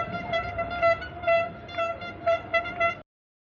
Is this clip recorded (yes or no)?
yes